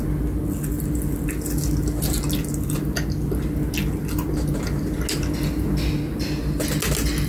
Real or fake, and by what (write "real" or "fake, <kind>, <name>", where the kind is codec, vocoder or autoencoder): real